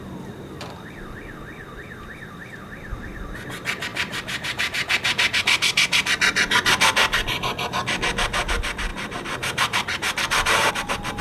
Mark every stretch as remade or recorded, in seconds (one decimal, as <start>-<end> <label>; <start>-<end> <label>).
0.0-3.9 recorded; 3.9-5.4 remade; 5.4-8.9 recorded; 8.9-10.7 remade; 10.7-11.2 recorded